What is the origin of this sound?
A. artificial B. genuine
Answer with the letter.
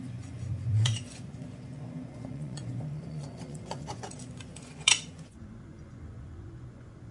A